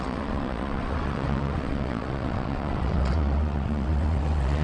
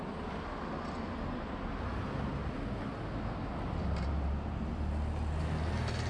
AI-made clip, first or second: first